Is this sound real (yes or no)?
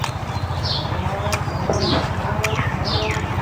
yes